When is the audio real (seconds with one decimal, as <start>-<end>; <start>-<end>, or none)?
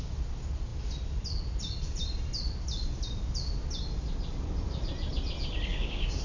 0.0-5.7